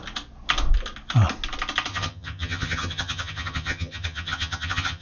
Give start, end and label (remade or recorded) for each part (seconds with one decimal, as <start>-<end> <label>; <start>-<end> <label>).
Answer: 0.0-1.9 recorded; 1.9-5.0 remade